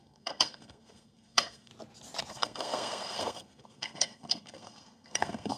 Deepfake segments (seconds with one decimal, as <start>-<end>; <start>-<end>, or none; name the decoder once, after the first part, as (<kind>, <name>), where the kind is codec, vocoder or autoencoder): 0.0-1.7 (codec, SNAC); 2.3-5.6

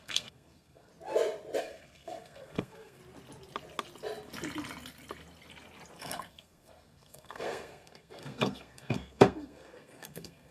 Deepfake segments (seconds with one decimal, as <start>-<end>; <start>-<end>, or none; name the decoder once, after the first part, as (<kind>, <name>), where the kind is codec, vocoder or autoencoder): 0.0-0.9 (codec, SNAC); 1.6-3.0; 6.0-10.5